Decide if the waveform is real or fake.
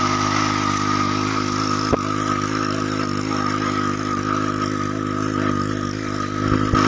real